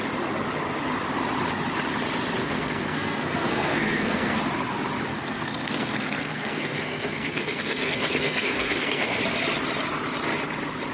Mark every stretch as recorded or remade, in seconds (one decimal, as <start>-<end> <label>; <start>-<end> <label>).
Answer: 0.0-2.4 recorded; 2.4-4.4 remade; 4.4-5.1 recorded; 5.1-9.2 remade; 9.2-10.9 recorded